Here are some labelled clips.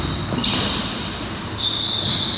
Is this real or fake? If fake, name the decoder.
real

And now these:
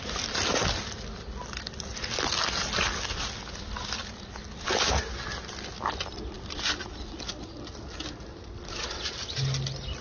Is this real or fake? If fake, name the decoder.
real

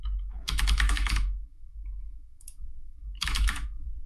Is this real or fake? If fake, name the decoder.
fake, autoencoder, DAC-VAE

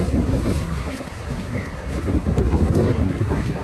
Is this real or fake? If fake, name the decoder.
fake, codec, SNAC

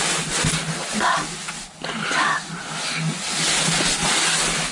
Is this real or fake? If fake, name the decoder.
real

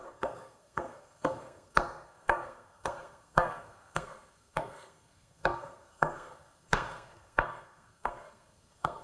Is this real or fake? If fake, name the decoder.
fake, codec, SNAC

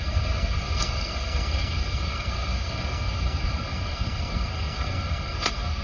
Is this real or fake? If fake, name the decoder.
fake, codec, SNAC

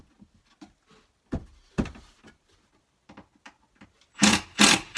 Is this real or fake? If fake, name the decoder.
real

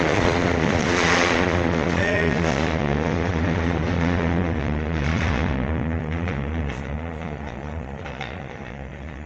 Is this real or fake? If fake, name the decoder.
fake, vocoder, Vocos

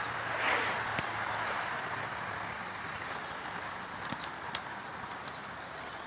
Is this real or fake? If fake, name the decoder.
real